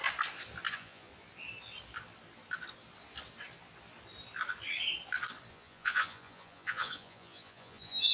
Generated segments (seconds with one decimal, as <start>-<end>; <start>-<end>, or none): 0.7-1.1; 5.5-8.1